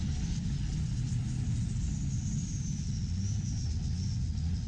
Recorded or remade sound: recorded